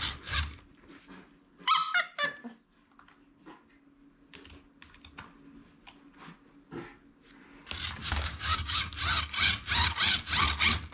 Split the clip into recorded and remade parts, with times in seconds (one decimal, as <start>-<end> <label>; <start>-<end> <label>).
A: 0.0-8.0 recorded; 8.0-8.8 remade; 8.8-10.9 recorded